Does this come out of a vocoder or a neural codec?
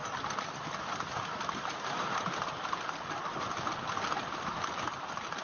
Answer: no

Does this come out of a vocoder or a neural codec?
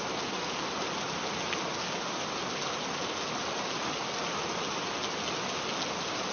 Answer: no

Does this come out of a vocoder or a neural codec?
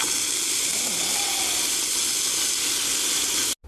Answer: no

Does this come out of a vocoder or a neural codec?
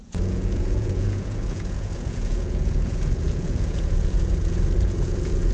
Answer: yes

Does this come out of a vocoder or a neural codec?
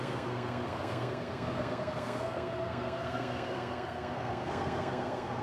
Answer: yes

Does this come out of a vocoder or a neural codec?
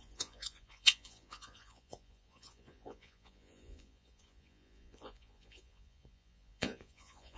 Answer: yes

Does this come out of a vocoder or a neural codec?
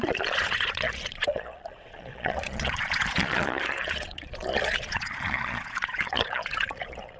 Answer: yes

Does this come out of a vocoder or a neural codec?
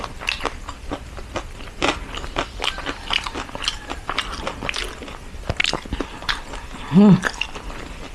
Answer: no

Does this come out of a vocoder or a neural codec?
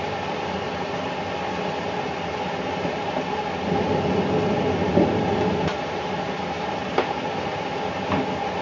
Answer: no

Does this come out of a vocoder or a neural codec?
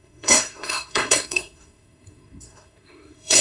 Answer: yes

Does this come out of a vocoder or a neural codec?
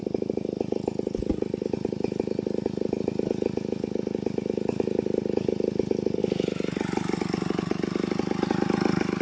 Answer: no